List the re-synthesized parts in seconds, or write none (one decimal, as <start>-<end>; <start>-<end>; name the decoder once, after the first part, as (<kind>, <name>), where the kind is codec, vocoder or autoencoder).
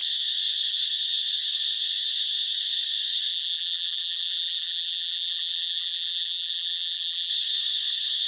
3.3-7.3 (vocoder, BigVGAN v2)